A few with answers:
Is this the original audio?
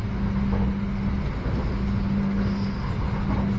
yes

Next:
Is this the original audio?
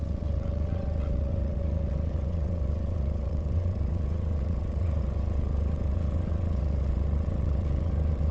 no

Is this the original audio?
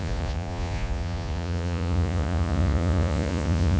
no